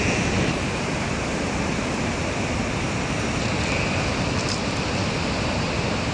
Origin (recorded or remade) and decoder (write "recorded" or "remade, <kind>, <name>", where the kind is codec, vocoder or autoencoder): remade, vocoder, BigVGAN v2